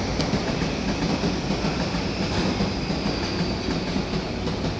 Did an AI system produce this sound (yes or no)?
no